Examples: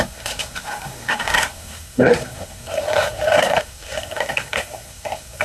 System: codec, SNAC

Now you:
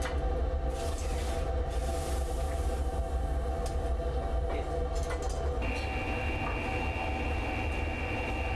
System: none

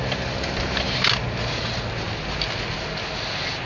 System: none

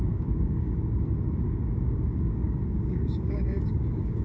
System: codec, DAC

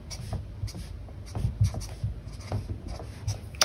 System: none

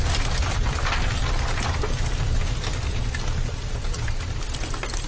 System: none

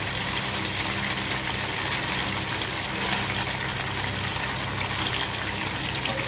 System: none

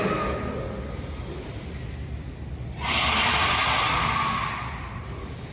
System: none